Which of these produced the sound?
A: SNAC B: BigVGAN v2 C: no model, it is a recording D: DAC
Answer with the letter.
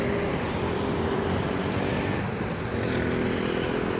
B